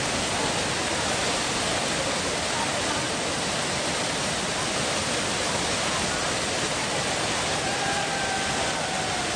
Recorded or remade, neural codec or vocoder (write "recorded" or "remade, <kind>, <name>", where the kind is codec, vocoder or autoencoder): recorded